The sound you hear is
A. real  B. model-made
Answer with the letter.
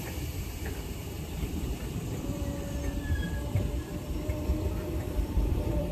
B